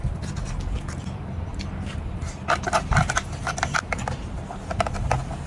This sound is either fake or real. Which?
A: real